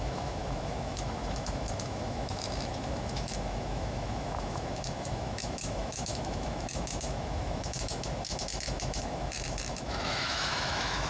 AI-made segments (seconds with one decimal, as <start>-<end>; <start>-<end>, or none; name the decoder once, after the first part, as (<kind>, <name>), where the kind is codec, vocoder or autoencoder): 0.0-11.1 (autoencoder, DAC-VAE)